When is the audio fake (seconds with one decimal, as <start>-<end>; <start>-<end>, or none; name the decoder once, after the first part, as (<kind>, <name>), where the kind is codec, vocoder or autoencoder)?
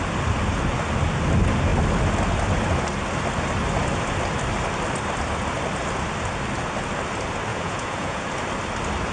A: 7.5-8.3 (vocoder, Vocos)